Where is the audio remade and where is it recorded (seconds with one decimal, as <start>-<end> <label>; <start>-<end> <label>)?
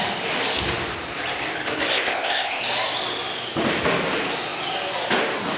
0.0-1.9 recorded; 1.9-2.6 remade; 2.6-5.6 recorded